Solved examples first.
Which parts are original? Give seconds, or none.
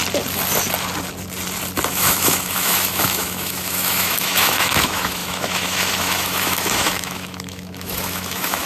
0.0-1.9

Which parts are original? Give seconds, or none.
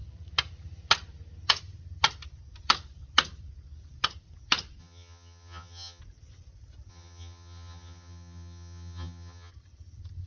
0.0-4.8; 6.0-6.9; 9.5-10.3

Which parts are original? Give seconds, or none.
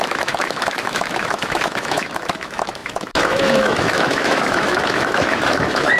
none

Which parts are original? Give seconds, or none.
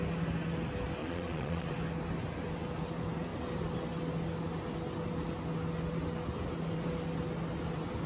0.0-1.0; 1.7-8.1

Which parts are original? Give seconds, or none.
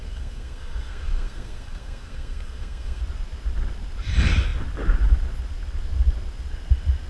3.0-7.1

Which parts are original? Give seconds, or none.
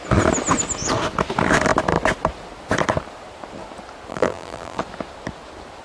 0.0-4.1; 4.8-5.8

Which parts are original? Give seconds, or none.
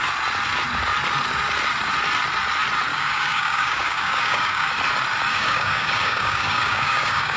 0.0-2.9; 4.7-5.3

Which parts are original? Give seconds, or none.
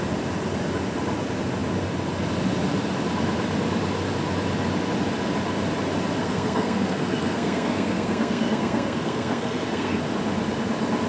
0.0-6.2; 10.0-11.1